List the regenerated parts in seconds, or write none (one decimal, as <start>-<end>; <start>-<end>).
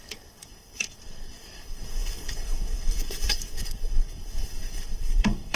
0.0-5.6